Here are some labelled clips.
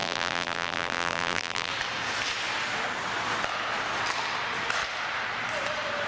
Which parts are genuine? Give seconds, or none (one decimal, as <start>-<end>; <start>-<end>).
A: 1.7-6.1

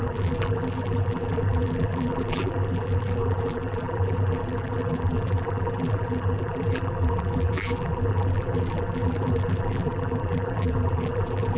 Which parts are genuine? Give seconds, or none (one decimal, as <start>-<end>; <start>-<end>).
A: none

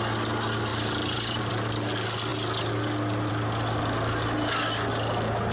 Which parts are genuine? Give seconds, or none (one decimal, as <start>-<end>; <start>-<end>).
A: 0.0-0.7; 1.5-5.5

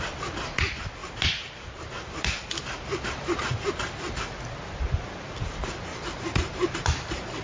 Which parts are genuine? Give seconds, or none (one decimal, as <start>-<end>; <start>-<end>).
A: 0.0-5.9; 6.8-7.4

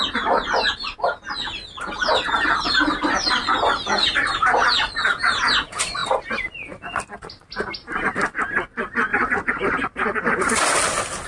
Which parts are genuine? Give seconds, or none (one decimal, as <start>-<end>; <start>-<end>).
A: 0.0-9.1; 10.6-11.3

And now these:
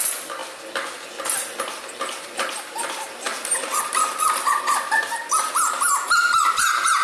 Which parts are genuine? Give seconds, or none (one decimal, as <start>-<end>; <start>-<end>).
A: 0.0-7.0

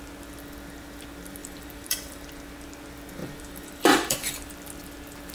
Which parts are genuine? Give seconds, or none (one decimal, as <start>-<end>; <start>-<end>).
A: 0.0-1.4; 2.3-3.2; 4.5-5.3

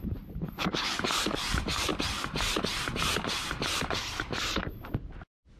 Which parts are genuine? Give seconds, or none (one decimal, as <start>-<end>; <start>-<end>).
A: 4.6-5.6